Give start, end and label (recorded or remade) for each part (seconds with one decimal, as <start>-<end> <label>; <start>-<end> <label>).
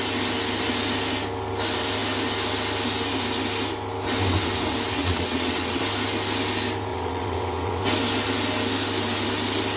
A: 0.0-5.0 recorded; 5.0-5.8 remade; 5.8-6.9 recorded; 6.9-7.8 remade; 7.8-9.8 recorded